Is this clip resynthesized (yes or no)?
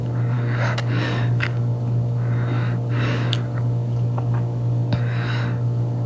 yes